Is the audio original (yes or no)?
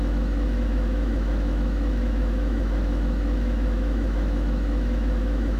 no